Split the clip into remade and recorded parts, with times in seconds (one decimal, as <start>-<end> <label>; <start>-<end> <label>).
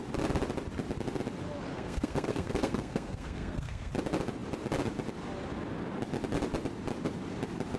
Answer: 0.0-1.7 recorded; 1.7-3.9 remade; 3.9-7.8 recorded